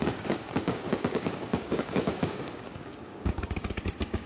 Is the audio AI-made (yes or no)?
yes